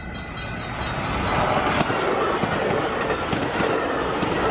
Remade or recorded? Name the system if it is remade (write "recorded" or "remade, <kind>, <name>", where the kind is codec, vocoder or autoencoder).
recorded